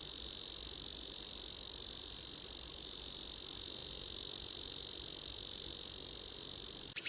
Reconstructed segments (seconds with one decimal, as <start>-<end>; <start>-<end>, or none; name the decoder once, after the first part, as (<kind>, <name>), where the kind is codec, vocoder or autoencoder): none